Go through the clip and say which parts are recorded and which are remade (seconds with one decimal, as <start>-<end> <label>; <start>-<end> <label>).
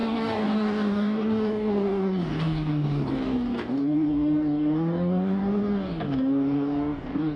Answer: 0.0-7.4 remade